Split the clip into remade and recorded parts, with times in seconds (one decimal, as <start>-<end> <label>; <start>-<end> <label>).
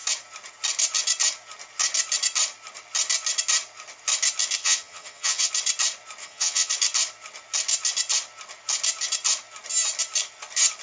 0.0-4.6 recorded; 4.6-5.5 remade; 5.5-6.2 recorded; 6.2-6.7 remade; 6.7-10.8 recorded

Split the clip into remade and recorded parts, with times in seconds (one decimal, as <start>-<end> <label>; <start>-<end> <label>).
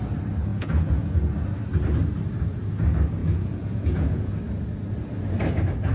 0.0-0.5 recorded; 0.5-1.1 remade; 1.1-3.2 recorded; 3.2-4.3 remade; 4.3-5.9 recorded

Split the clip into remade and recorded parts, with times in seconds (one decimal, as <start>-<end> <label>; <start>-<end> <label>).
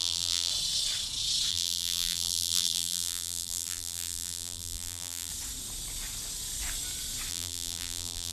0.0-0.5 remade; 0.5-1.5 recorded; 1.5-5.3 remade; 5.3-7.3 recorded; 7.3-8.3 remade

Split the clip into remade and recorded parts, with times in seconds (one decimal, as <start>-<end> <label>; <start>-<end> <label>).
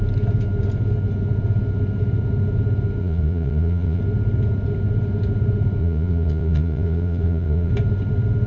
0.0-3.0 recorded; 3.0-4.0 remade; 4.0-5.8 recorded; 5.8-7.7 remade; 7.7-8.5 recorded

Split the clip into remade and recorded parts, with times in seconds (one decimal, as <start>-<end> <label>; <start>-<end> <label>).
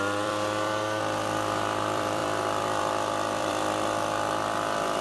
0.0-5.0 remade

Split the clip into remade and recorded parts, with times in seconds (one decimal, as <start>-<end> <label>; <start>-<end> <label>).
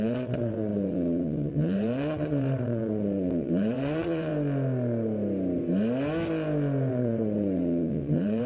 0.0-4.3 remade; 4.3-6.9 recorded; 6.9-8.5 remade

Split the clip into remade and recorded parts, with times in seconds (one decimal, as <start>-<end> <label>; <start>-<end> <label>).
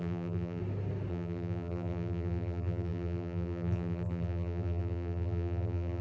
0.0-0.6 remade; 0.6-1.1 recorded; 1.1-6.0 remade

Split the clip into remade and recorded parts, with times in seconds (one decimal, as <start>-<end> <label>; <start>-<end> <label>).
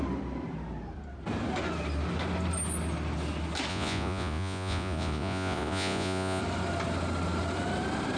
0.0-3.7 recorded; 3.7-6.4 remade; 6.4-8.2 recorded